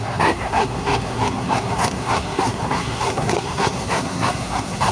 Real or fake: fake